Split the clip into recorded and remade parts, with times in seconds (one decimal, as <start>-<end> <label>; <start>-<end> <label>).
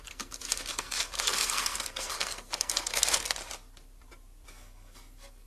0.0-3.4 remade; 3.4-4.5 recorded; 4.5-5.5 remade